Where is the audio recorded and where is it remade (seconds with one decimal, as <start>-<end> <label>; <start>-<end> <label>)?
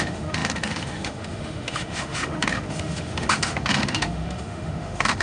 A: 0.0-5.2 remade